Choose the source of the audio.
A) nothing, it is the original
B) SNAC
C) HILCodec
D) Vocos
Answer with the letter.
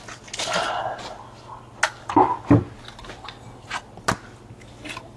A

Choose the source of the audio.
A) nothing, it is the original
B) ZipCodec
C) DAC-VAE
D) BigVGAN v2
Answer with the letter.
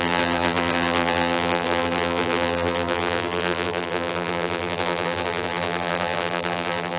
D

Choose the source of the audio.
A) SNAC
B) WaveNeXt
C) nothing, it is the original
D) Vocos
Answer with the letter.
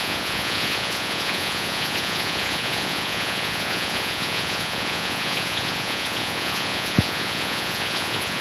D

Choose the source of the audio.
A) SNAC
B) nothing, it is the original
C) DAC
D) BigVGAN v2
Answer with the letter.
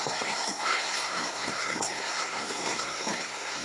A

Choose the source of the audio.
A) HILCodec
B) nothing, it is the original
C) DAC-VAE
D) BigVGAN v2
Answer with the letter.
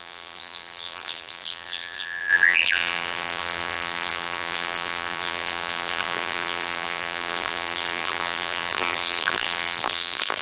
D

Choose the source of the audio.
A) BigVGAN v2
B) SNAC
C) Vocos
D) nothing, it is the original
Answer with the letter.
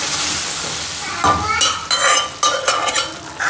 D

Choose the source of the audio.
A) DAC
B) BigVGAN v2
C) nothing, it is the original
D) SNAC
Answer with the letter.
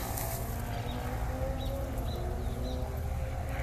C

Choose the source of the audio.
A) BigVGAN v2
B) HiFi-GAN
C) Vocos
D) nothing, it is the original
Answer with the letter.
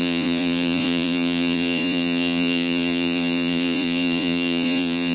C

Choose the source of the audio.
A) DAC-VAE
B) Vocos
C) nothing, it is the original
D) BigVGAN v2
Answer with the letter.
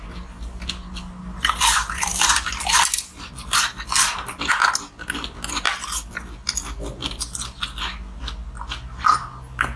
C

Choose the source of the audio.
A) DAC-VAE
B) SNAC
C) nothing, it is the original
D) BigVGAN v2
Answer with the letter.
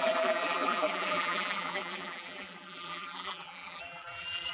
D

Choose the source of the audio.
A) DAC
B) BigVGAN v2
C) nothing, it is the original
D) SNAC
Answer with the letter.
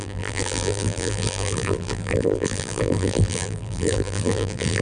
B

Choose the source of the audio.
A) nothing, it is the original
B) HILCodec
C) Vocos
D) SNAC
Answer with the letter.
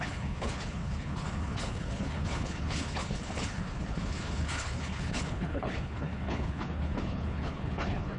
B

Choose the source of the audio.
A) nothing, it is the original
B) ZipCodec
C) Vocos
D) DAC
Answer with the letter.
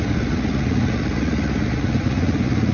C